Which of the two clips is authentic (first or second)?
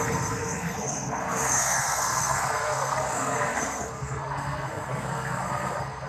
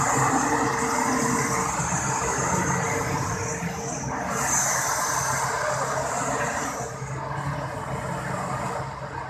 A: second